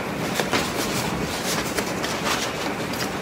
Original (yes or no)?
yes